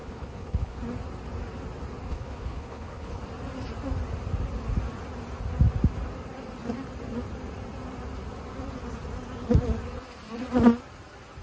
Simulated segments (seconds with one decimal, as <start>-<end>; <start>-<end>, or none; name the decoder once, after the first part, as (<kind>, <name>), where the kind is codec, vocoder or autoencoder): 0.0-0.8 (codec, HILCodec); 2.1-3.2